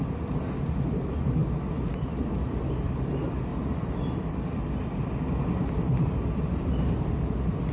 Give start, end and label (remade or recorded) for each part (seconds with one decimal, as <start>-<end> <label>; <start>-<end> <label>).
0.0-7.7 recorded